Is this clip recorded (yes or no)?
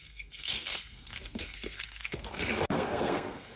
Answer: no